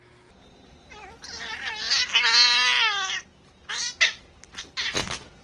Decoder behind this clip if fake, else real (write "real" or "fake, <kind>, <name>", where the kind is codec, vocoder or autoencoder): real